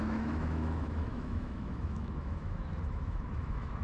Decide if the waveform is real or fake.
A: fake